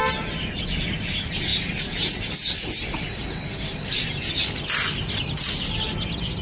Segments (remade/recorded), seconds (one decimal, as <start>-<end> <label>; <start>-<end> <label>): 0.0-6.4 recorded